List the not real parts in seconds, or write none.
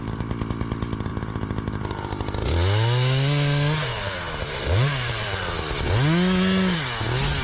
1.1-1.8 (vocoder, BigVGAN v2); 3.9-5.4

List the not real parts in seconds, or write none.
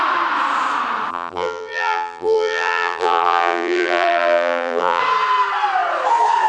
1.1-5.0 (vocoder, BigVGAN v2)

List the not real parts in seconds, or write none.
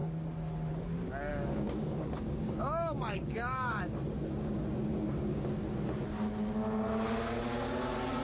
1.3-3.8 (codec, DAC); 4.9-5.4